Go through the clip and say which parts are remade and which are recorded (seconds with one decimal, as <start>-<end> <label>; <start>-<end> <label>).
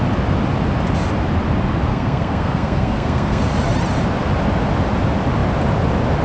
0.0-1.9 recorded; 1.9-3.4 remade; 3.4-6.2 recorded